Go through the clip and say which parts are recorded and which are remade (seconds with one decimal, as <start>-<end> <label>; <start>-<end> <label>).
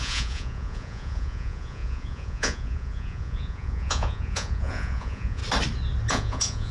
0.0-5.4 remade; 5.4-6.1 recorded; 6.1-6.7 remade